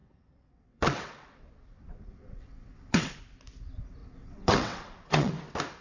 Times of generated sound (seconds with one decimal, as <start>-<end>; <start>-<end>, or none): 0.0-3.2; 4.0-5.3